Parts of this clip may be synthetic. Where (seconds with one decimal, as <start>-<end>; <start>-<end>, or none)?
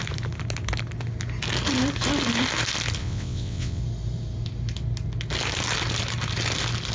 3.0-3.8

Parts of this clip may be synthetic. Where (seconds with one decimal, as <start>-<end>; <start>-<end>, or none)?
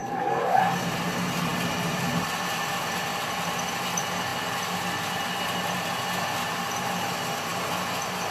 0.0-0.6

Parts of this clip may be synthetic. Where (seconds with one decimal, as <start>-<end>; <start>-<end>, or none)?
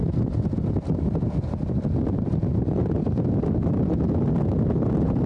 none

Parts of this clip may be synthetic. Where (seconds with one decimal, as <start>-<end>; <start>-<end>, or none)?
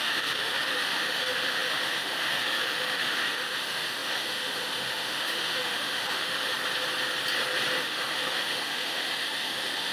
0.0-6.5; 7.8-9.9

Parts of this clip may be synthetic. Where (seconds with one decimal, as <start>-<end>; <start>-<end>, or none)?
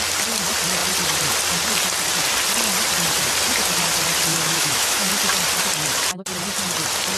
4.3-5.1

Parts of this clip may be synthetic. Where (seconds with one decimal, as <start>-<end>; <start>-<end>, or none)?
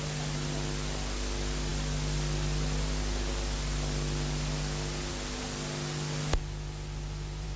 none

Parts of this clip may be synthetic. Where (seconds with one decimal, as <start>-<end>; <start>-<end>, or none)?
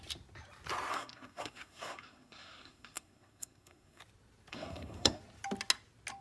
0.9-4.0; 4.5-5.2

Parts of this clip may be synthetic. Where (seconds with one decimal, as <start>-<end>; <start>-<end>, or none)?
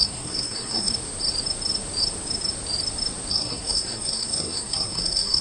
0.0-0.9; 3.3-5.4